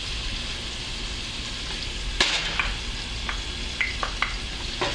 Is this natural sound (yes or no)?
yes